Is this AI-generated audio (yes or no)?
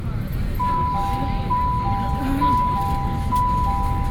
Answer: no